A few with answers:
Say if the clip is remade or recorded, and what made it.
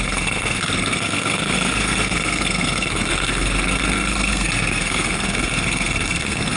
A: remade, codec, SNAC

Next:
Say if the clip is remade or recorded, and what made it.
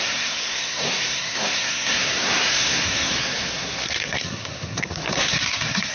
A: remade, codec, SNAC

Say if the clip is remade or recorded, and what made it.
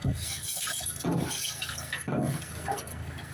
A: remade, codec, SNAC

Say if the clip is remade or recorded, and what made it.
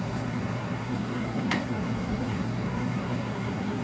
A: remade, codec, SNAC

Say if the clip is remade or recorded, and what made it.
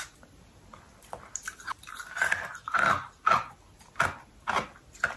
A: recorded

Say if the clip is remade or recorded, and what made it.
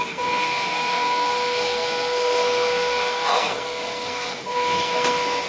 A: remade, codec, SNAC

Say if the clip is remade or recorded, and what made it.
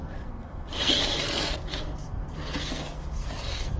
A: remade, codec, SNAC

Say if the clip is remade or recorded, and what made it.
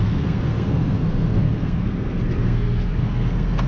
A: remade, codec, SNAC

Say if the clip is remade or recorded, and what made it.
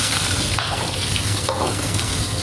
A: remade, codec, SNAC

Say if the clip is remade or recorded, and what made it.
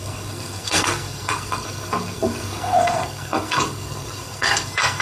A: remade, codec, SNAC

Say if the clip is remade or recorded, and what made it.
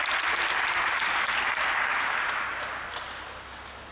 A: recorded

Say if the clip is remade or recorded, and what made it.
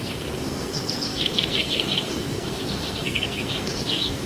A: remade, codec, SNAC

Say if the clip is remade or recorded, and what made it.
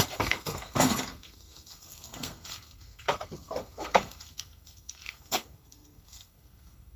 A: remade, codec, SNAC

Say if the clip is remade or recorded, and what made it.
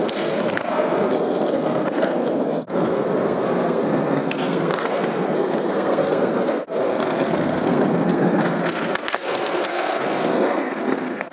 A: remade, codec, SNAC